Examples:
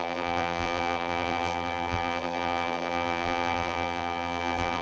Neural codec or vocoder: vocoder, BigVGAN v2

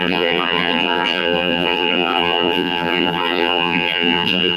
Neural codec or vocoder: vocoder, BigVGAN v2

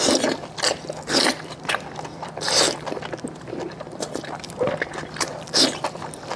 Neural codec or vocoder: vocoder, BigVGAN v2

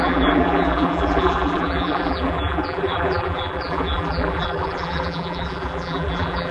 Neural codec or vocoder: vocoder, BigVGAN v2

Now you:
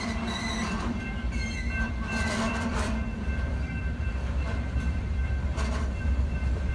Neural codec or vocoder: vocoder, BigVGAN v2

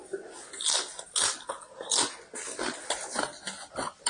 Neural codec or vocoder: none